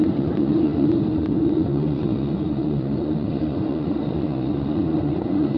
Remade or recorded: remade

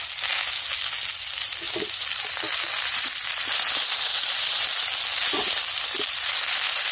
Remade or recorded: recorded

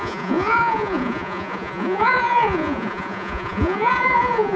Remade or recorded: remade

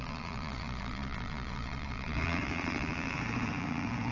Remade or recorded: remade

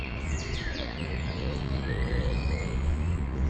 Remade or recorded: remade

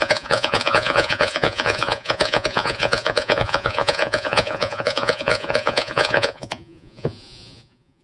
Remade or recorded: remade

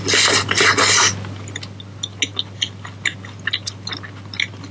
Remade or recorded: recorded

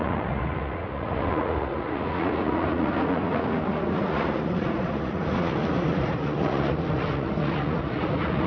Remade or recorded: remade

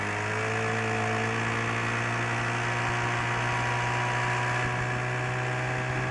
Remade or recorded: recorded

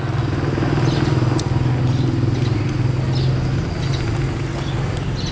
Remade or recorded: recorded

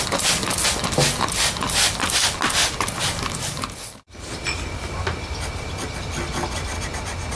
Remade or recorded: recorded